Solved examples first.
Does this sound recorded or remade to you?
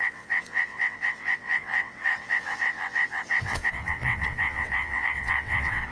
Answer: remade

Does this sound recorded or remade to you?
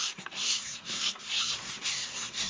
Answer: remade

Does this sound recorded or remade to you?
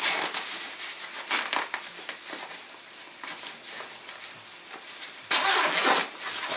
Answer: recorded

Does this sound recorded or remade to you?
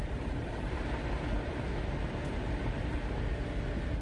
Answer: recorded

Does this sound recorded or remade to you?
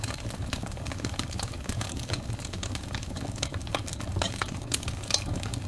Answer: remade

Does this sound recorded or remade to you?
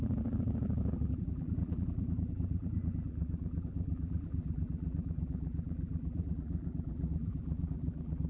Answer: remade